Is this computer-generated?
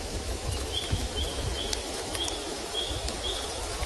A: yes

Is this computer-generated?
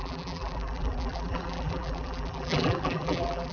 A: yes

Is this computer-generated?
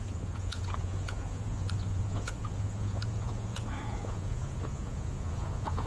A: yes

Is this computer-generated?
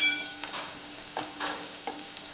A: yes